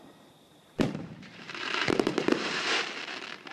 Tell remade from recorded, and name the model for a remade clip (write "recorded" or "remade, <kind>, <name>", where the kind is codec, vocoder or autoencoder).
remade, vocoder, BigVGAN v2